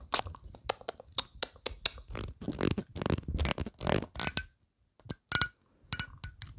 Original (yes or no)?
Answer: yes